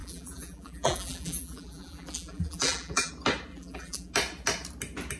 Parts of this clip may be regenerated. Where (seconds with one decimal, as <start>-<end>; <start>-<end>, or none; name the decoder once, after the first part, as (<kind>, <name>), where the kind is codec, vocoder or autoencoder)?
0.0-3.1 (vocoder, BigVGAN v2); 3.5-4.1